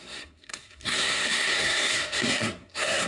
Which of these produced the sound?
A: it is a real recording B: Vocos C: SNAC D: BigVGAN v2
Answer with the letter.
C